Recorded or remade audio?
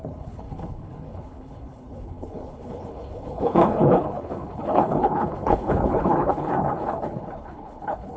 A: remade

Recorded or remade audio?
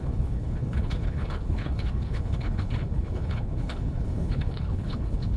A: remade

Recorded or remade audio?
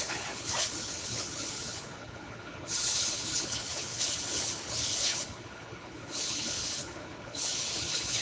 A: remade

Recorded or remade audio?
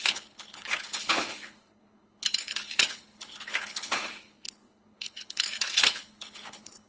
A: remade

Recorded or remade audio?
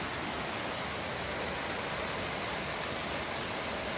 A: recorded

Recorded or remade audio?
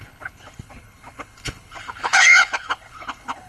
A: remade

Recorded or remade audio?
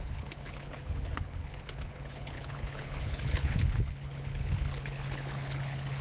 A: remade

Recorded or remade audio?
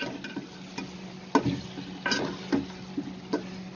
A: recorded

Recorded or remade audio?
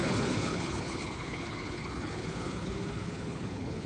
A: remade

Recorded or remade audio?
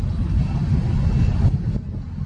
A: recorded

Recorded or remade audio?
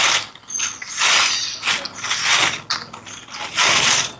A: recorded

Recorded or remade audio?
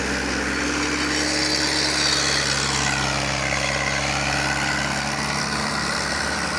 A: recorded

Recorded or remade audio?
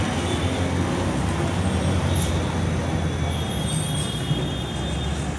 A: recorded